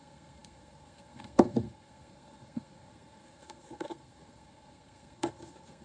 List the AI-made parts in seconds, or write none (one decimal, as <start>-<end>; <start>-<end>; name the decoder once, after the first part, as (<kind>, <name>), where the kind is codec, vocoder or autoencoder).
0.0-5.8 (codec, SNAC)